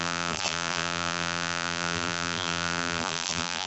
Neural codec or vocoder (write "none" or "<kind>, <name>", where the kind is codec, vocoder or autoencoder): vocoder, BigVGAN v2